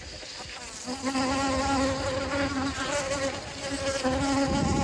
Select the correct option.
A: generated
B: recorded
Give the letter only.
B